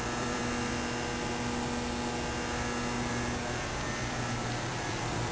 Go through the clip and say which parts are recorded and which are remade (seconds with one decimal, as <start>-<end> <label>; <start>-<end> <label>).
0.0-0.4 remade; 0.4-3.1 recorded; 3.1-5.3 remade